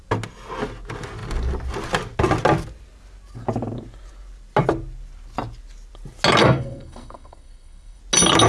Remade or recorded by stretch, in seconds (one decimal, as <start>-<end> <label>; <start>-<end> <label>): 0.0-6.4 recorded; 6.4-8.0 remade; 8.0-8.5 recorded